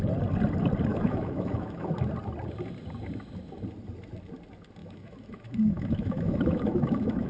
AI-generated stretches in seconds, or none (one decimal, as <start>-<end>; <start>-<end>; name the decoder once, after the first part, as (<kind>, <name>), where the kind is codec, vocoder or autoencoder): 0.9-1.9 (autoencoder, DAC-VAE); 4.8-7.3